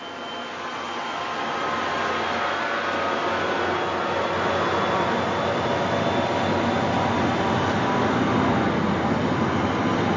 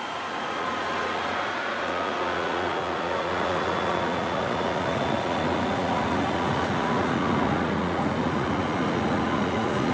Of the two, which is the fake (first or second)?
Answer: second